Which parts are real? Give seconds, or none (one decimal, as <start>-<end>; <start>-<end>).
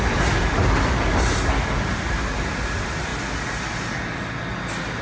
0.0-5.0